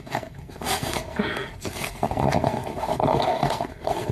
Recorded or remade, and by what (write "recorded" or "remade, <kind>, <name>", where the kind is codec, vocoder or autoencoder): remade, codec, SNAC